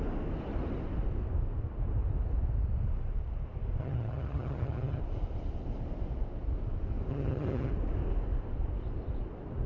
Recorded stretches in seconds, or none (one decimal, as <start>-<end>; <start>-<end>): 0.0-3.8; 5.0-7.1; 7.7-9.7